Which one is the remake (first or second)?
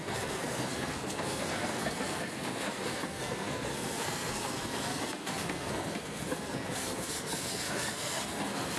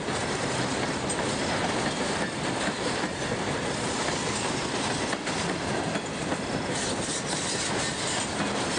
first